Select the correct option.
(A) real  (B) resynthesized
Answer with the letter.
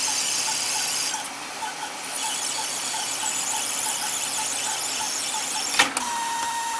A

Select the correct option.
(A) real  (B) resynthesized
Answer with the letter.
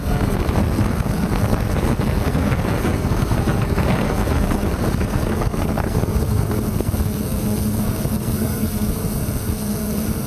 B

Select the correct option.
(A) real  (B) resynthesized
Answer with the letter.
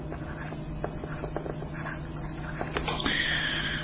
A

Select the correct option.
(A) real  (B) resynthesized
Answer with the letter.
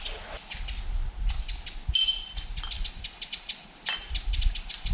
A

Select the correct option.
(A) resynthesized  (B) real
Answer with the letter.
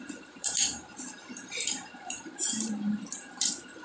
A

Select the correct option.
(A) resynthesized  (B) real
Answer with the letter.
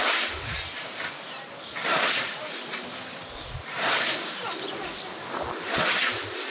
B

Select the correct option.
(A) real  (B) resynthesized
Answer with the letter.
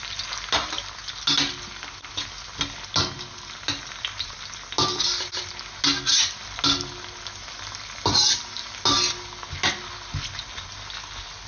A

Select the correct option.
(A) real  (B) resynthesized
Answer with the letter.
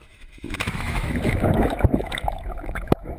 B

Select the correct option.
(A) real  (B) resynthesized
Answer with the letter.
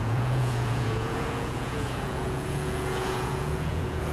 B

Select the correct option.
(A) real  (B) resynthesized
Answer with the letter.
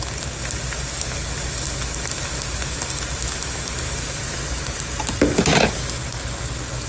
A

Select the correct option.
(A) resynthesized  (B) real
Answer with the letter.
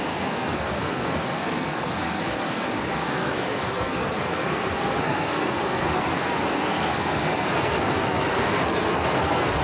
A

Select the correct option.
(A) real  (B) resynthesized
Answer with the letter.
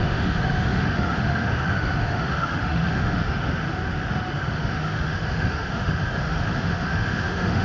B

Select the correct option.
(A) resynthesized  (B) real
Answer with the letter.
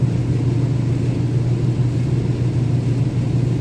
B